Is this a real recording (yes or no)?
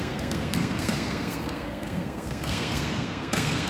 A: no